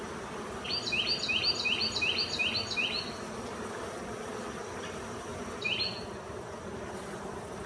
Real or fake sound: real